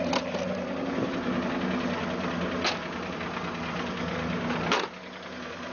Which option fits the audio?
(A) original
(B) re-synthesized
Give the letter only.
A